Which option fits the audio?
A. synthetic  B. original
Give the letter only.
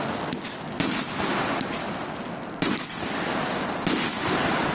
B